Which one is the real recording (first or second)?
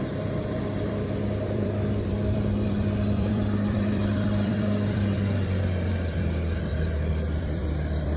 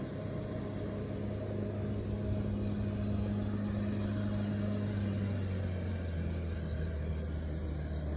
second